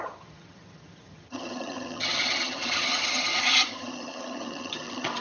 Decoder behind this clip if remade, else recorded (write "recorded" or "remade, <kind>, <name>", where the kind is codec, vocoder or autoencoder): remade, vocoder, HiFi-GAN